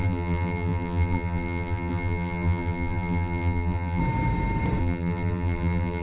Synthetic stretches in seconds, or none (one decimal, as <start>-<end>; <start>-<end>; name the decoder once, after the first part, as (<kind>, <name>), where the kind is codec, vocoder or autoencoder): 0.0-4.0 (vocoder, BigVGAN v2); 4.8-6.0